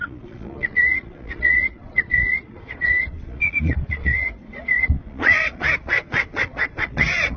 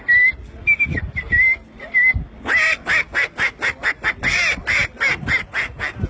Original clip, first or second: second